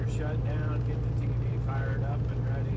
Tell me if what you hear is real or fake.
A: real